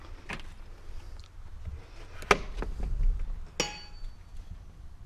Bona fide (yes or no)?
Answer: yes